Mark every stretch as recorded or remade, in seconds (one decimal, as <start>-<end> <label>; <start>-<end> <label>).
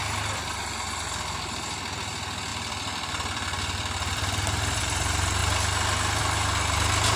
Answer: 0.0-2.5 recorded; 2.5-4.8 remade; 4.8-7.2 recorded